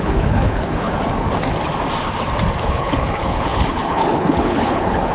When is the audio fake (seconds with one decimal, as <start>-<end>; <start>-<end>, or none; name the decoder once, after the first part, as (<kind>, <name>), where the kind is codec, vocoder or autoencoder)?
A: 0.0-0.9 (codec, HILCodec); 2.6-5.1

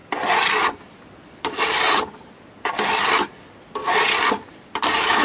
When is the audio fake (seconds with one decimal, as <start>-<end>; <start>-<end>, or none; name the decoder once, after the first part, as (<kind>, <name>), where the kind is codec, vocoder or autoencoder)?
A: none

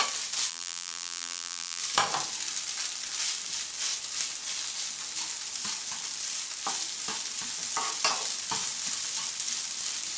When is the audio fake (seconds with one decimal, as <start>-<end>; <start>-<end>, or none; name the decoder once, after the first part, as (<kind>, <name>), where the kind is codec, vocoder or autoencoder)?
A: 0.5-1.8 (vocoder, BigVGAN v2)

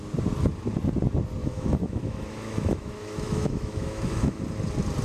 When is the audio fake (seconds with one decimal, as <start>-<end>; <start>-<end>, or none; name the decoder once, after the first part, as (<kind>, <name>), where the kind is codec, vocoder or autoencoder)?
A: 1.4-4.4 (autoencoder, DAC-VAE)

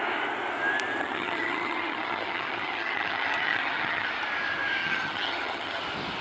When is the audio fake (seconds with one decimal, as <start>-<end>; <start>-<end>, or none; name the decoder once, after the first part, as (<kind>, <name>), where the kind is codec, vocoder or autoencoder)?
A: 1.0-4.1 (vocoder, HiFi-GAN); 4.8-5.8

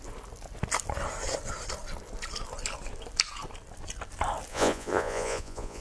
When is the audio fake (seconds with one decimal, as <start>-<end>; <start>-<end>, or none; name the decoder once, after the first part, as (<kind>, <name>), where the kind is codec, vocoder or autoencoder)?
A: 4.5-5.8 (vocoder, Vocos)